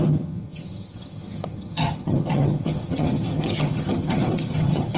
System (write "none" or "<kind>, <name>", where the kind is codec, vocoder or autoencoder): vocoder, HiFi-GAN